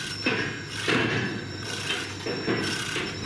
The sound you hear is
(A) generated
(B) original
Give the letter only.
B